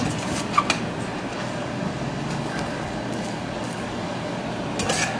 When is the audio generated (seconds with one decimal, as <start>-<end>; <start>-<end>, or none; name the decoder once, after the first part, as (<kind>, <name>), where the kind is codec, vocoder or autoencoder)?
1.3-4.4 (codec, DAC)